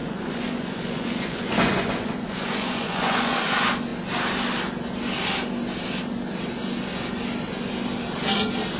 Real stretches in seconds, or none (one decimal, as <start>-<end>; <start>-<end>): 3.5-8.8